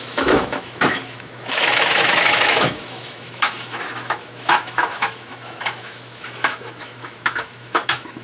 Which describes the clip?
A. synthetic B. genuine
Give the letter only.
A